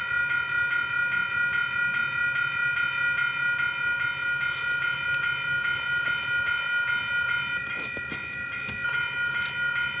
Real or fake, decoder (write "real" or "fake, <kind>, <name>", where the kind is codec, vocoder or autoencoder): real